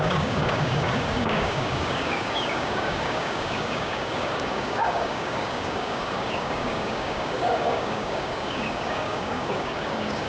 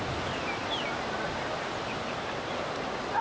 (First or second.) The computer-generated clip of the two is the first